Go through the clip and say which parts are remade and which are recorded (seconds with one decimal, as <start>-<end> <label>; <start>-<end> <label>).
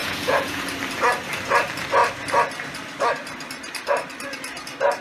0.0-0.6 remade; 0.6-5.0 recorded